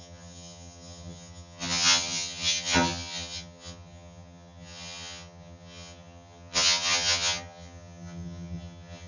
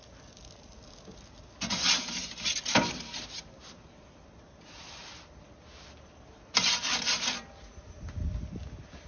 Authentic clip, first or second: second